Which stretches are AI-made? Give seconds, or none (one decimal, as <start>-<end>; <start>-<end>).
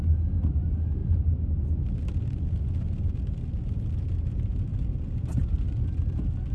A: none